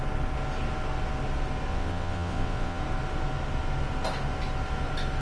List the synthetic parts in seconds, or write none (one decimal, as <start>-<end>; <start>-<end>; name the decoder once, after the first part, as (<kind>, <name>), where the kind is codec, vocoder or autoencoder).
1.7-2.8 (vocoder, WaveNeXt)